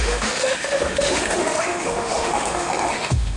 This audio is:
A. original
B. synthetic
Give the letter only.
B